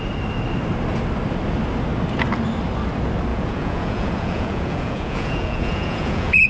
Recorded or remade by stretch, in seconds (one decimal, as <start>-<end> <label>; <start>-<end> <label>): 0.0-3.3 recorded; 3.3-6.5 remade